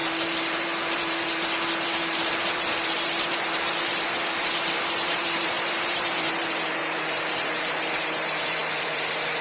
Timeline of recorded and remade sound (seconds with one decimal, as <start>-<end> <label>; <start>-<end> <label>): 0.0-9.4 remade